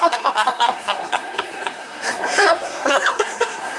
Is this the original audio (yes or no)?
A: no